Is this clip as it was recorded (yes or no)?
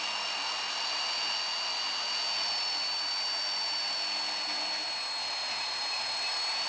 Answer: yes